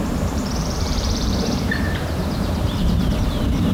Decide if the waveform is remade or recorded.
remade